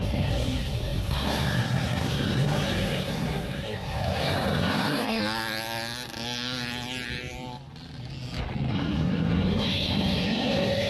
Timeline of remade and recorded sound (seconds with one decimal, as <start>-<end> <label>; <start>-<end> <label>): 0.0-5.2 remade; 5.2-8.7 recorded; 8.7-10.9 remade